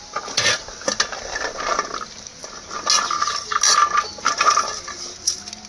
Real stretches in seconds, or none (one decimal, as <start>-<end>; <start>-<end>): 0.0-5.7